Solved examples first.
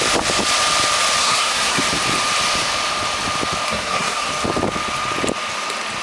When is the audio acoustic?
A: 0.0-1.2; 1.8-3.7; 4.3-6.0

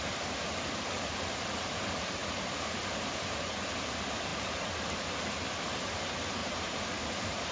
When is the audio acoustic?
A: 0.0-2.2; 2.8-6.4

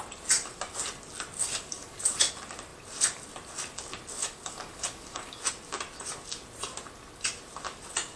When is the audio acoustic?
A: 0.0-1.4; 2.3-4.2; 5.4-8.2

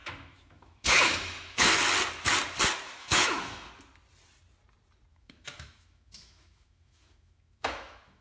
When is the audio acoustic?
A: 1.7-3.0; 3.7-5.1

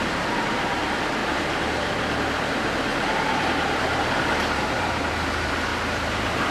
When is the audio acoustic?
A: 0.0-1.2; 1.9-2.9; 3.9-5.7